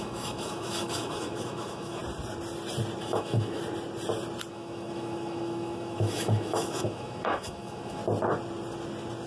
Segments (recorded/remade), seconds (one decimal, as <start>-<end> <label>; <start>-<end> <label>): 0.0-2.0 remade; 2.0-3.0 recorded; 3.0-3.6 remade; 3.6-4.5 recorded; 4.5-8.0 remade; 8.0-9.3 recorded